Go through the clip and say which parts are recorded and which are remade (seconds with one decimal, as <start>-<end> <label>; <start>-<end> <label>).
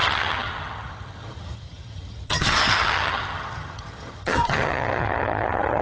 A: 0.0-5.8 remade